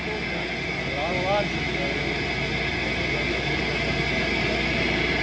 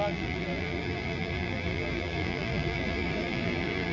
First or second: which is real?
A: first